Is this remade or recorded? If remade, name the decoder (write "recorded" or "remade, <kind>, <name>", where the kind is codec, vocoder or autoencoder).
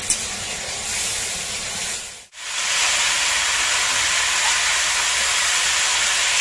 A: recorded